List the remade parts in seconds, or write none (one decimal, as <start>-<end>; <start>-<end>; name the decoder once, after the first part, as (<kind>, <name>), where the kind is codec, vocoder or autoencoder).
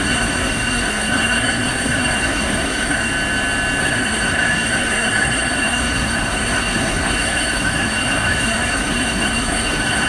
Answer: 0.0-3.1 (codec, SNAC); 3.8-10.1